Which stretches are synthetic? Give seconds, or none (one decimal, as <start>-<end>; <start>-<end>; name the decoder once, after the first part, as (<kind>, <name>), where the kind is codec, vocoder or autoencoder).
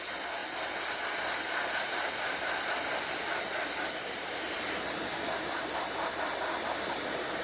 none